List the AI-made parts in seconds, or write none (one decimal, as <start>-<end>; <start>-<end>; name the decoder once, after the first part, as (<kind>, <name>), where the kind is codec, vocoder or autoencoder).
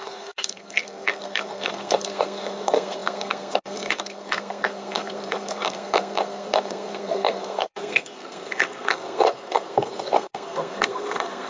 0.0-11.5 (codec, SNAC)